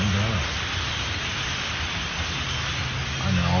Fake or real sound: real